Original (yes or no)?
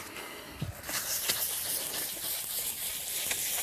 yes